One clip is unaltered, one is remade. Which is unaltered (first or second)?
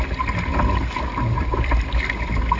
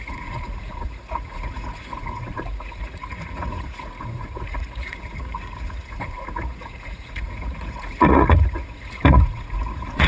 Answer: first